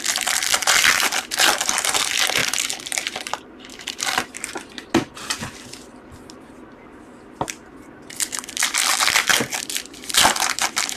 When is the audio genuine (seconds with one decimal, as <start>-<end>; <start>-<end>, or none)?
0.0-11.0